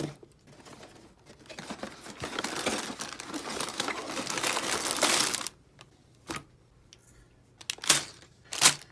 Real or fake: real